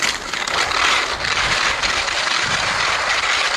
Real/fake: real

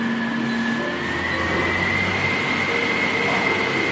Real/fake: real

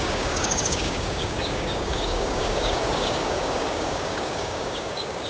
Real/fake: fake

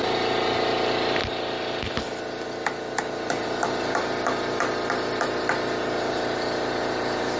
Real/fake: real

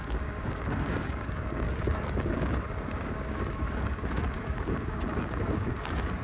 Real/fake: fake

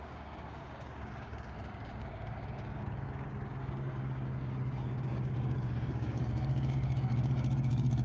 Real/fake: fake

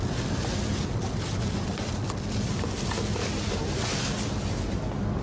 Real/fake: real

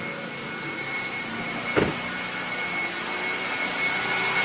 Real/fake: real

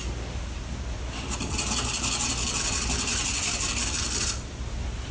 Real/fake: real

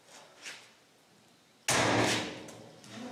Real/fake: real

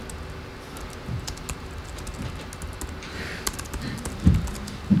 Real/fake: real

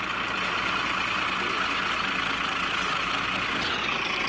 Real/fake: real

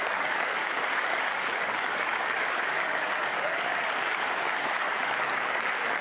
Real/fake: fake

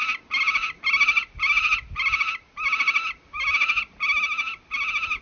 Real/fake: real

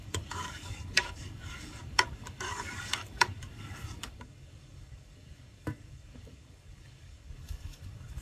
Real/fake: fake